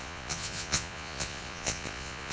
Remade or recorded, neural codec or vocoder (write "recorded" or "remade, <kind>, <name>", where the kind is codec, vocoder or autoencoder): remade, vocoder, Vocos